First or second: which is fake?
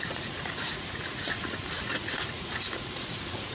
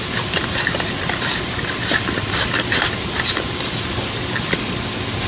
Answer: first